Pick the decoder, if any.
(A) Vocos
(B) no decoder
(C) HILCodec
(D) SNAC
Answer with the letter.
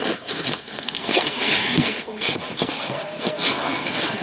D